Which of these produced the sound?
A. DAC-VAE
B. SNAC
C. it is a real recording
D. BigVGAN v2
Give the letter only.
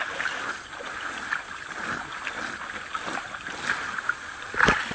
C